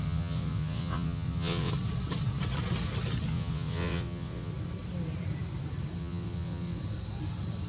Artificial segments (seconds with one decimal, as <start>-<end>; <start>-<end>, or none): 0.0-1.7; 3.3-4.5; 6.0-6.8